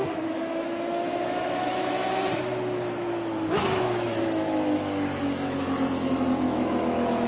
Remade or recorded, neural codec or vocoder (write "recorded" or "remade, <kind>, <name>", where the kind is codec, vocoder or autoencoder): remade, autoencoder, DAC-VAE